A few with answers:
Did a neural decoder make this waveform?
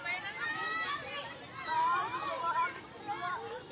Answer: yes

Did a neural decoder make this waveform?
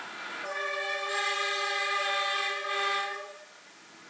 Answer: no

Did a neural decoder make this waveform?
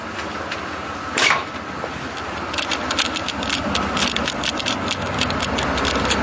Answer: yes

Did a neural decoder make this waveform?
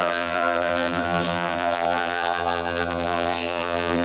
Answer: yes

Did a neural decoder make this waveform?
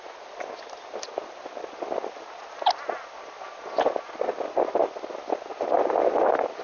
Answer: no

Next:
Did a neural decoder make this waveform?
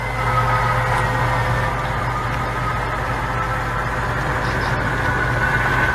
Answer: no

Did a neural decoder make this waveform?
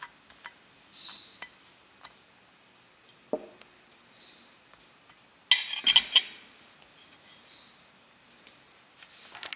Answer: no